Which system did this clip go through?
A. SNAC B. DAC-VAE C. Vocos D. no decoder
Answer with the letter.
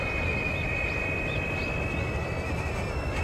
D